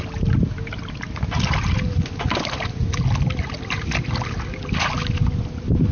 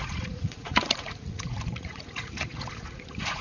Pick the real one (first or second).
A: first